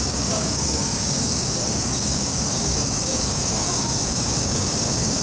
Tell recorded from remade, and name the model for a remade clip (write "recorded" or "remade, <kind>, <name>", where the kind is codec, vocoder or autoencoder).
remade, codec, DAC